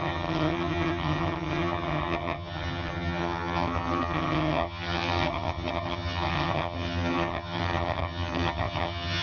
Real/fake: fake